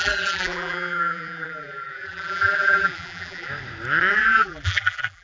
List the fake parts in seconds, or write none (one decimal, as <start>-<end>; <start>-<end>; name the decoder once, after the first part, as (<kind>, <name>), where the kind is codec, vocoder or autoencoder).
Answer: 0.0-3.5 (vocoder, BigVGAN v2); 4.1-5.2